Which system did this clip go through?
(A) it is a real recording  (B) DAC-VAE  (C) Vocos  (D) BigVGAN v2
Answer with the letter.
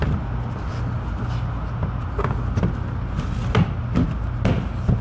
A